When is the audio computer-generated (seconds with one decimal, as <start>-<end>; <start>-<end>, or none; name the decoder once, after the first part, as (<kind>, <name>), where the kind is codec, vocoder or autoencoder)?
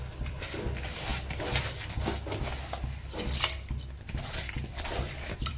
0.0-1.1 (vocoder, BigVGAN v2); 4.5-5.6